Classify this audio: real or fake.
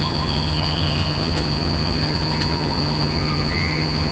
fake